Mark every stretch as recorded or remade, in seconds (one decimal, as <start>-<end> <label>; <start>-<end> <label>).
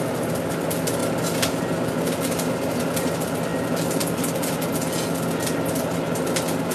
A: 0.0-6.7 recorded